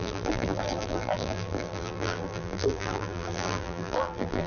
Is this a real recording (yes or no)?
no